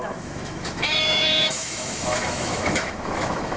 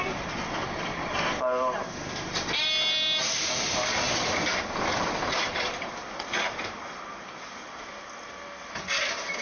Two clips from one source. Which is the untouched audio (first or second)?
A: second